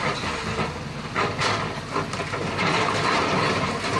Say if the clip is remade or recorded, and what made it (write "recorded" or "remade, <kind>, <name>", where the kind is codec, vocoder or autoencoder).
recorded